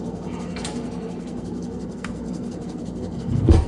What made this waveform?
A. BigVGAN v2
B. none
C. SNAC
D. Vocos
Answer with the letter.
C